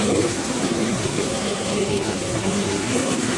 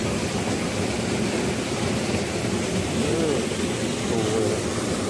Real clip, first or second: second